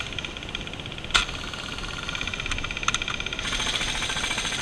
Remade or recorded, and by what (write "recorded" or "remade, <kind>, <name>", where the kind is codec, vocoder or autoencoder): recorded